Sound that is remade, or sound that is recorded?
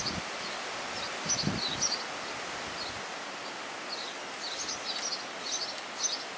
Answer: recorded